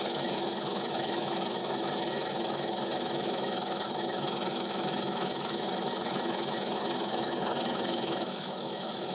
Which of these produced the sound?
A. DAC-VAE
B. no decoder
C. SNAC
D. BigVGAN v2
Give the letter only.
A